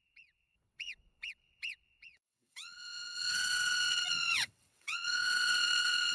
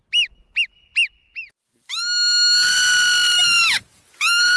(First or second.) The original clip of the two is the second